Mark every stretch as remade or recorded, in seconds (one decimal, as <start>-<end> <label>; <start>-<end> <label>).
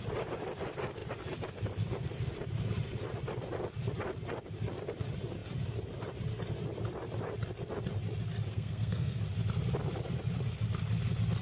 0.0-8.5 recorded; 8.5-9.2 remade; 9.2-11.4 recorded